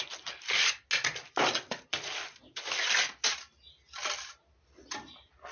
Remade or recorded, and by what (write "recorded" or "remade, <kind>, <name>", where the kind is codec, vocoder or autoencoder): recorded